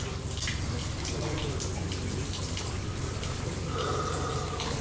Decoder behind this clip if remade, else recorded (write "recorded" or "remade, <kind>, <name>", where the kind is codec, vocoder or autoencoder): recorded